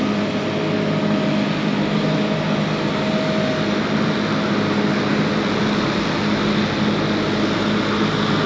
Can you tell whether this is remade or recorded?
recorded